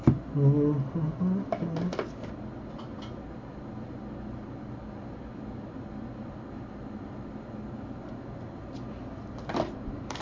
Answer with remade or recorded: recorded